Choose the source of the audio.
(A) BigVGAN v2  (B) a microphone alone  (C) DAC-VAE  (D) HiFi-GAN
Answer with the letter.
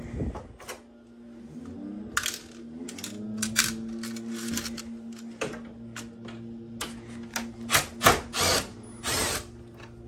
B